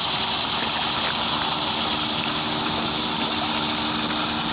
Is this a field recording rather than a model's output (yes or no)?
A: yes